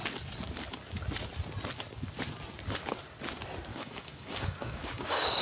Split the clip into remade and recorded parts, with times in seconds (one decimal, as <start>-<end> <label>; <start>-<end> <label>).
0.0-3.7 recorded; 3.7-5.4 remade